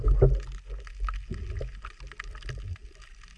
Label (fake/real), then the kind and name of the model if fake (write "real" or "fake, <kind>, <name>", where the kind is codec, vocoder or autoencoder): real